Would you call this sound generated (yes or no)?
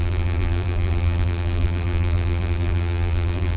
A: yes